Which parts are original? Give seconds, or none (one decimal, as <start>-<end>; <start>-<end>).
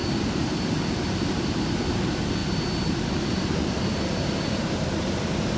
0.0-5.6